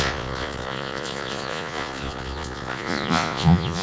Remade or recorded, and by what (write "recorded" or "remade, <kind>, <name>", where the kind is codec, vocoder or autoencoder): remade, vocoder, Vocos